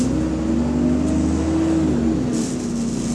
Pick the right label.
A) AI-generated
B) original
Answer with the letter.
B